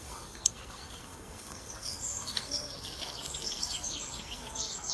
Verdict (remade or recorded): remade